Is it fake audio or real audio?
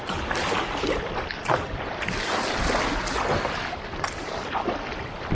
real